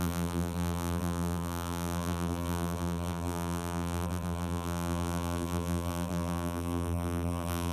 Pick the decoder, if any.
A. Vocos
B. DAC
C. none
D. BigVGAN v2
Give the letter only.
D